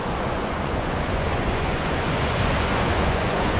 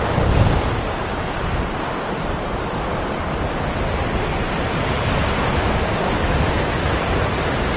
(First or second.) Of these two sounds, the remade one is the first